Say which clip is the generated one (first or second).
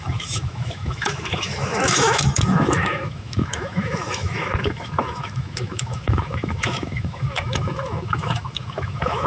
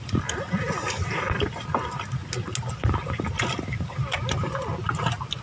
first